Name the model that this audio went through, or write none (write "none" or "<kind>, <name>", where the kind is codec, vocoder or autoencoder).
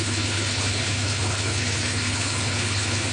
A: codec, HILCodec